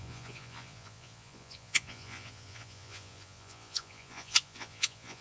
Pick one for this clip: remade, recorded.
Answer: remade